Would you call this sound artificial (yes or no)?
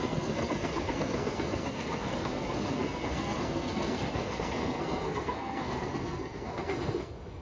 yes